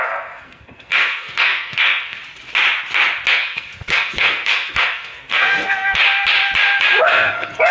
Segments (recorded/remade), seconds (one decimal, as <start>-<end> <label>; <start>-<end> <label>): 0.0-2.2 remade; 2.2-3.3 recorded; 3.3-6.0 remade; 6.0-7.0 recorded; 7.0-7.7 remade